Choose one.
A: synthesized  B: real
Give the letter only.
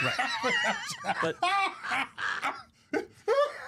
A